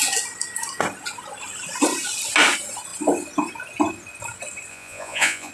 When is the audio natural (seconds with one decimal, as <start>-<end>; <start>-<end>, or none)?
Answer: 0.0-4.7